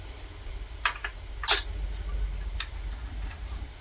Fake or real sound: real